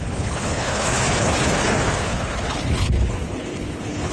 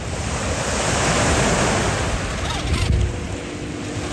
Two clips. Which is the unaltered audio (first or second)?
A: second